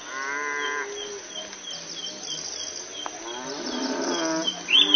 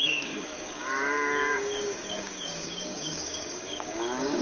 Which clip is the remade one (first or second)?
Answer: second